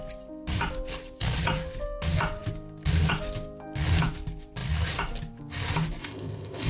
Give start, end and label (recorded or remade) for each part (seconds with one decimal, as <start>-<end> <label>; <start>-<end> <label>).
0.0-6.0 recorded; 6.0-6.7 remade